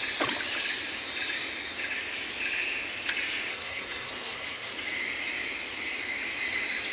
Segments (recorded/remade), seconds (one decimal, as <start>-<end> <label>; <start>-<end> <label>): 0.0-3.5 recorded; 3.5-4.7 remade; 4.7-6.9 recorded